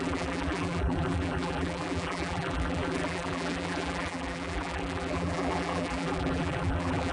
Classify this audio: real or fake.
fake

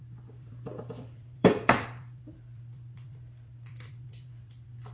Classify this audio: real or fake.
fake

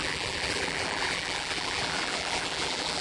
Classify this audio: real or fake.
fake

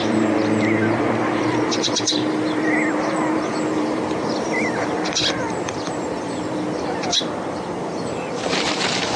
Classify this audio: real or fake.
fake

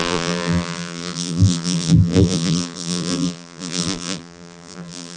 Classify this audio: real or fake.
fake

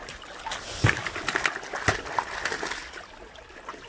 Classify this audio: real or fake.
real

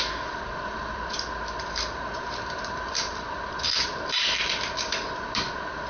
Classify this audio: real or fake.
fake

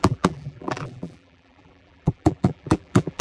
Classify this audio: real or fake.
fake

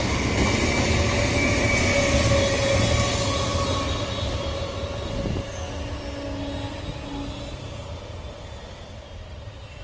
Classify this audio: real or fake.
real